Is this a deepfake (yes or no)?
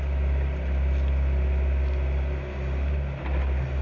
no